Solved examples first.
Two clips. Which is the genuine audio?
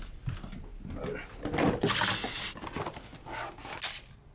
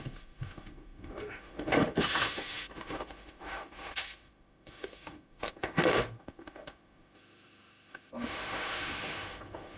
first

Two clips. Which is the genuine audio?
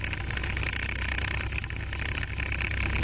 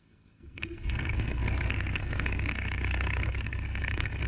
first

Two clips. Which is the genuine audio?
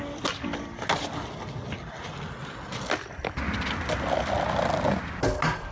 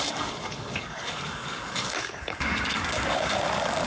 first